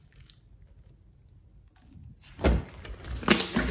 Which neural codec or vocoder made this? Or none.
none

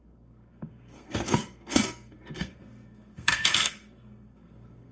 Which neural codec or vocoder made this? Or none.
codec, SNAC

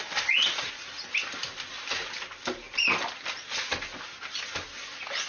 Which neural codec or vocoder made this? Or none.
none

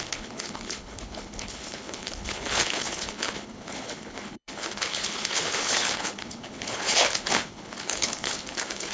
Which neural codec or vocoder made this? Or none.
codec, HILCodec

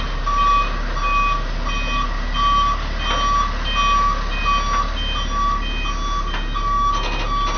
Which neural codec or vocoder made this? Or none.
none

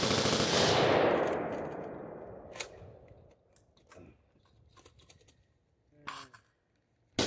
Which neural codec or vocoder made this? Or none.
none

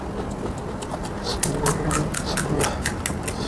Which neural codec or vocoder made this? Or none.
none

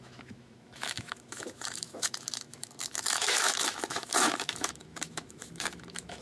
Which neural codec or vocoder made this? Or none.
autoencoder, DAC-VAE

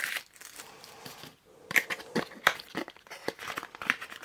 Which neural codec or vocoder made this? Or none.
vocoder, BigVGAN v2